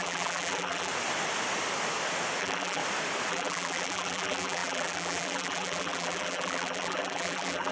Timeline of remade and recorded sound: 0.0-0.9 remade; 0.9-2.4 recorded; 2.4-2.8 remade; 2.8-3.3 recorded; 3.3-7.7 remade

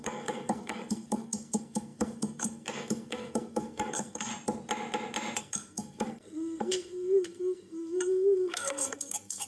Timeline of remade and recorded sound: 0.0-4.3 remade; 4.3-5.4 recorded; 5.4-9.5 remade

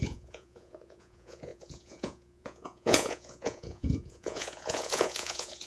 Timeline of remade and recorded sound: 0.0-5.7 remade

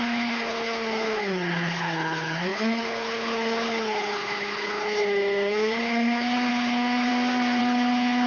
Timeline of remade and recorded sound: 0.0-7.1 remade; 7.1-7.6 recorded; 7.6-8.3 remade

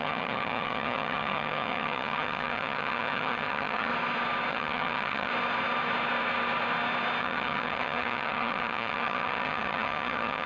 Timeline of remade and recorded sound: 0.0-3.9 remade; 3.9-4.5 recorded; 4.5-5.3 remade; 5.3-7.2 recorded; 7.2-10.5 remade